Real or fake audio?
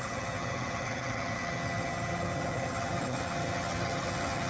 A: fake